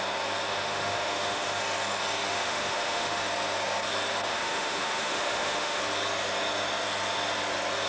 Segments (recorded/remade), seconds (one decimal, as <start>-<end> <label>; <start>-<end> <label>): 0.0-0.5 recorded; 0.5-1.6 remade; 1.6-2.3 recorded; 2.3-3.2 remade; 3.2-4.3 recorded; 4.3-5.8 remade; 5.8-7.9 recorded